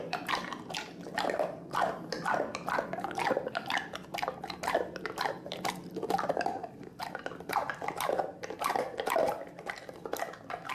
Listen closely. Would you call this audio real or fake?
fake